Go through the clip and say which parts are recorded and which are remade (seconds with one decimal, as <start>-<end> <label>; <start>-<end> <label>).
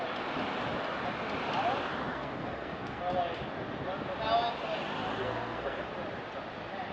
0.0-2.1 recorded; 2.1-3.0 remade; 3.0-5.2 recorded; 5.2-5.9 remade; 5.9-6.9 recorded